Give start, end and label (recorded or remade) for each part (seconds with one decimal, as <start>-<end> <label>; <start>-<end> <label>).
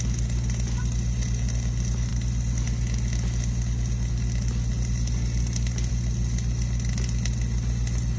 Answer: 0.0-8.2 recorded